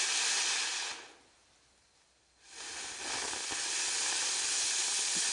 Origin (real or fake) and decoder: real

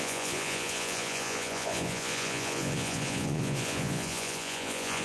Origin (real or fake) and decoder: fake, vocoder, Vocos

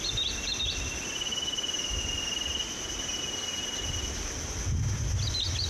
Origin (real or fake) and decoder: real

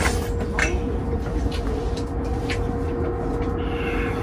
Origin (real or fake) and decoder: real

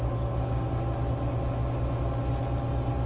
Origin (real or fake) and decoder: real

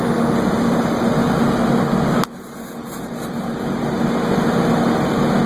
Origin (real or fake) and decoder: real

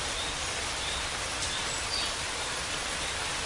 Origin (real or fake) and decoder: real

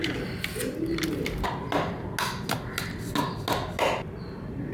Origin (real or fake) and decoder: real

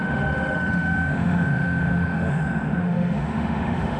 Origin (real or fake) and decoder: fake, autoencoder, DAC-VAE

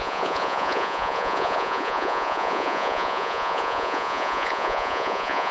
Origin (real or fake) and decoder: fake, vocoder, Vocos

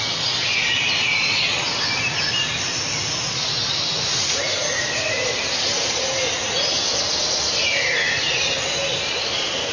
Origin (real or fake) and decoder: real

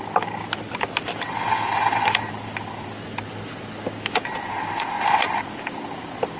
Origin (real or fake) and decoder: real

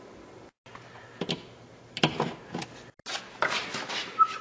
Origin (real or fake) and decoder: real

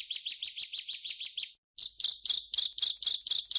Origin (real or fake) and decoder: real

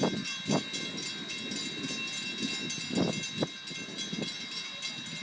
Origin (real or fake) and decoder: real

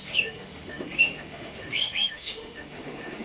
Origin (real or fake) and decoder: fake, autoencoder, DAC-VAE